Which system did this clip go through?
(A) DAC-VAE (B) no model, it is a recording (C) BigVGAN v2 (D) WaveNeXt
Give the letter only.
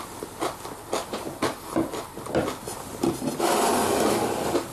B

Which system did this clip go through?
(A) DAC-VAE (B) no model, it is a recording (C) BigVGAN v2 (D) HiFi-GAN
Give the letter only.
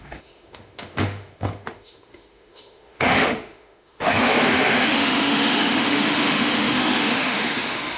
A